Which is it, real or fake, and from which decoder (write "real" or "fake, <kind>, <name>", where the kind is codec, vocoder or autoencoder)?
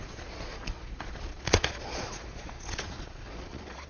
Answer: fake, vocoder, Vocos